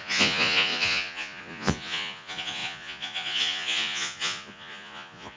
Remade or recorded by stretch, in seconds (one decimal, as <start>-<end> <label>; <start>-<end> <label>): 0.0-5.4 remade